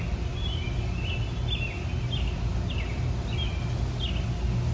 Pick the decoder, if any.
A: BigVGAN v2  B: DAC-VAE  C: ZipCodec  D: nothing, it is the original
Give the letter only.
D